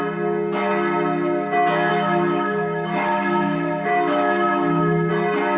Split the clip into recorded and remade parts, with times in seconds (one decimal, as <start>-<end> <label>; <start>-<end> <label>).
0.0-1.9 recorded; 1.9-5.1 remade; 5.1-5.6 recorded